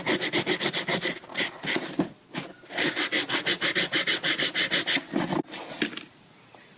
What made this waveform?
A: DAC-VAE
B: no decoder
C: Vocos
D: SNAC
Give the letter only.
B